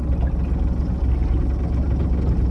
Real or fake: real